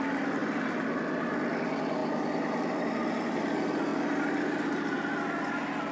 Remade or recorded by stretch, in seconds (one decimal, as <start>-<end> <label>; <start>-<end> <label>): 0.0-2.0 recorded; 2.0-3.0 remade; 3.0-3.9 recorded; 3.9-4.6 remade; 4.6-5.9 recorded